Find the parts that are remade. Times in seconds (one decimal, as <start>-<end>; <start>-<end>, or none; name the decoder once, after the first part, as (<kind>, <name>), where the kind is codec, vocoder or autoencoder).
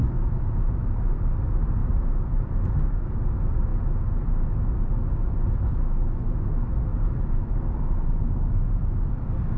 6.9-7.6 (vocoder, BigVGAN v2)